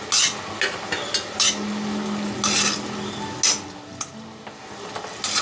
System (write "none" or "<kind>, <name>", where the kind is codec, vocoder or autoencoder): none